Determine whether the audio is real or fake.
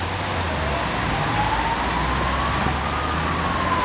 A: real